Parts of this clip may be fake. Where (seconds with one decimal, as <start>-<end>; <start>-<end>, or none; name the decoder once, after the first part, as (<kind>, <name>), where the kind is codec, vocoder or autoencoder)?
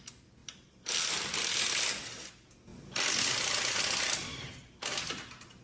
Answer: none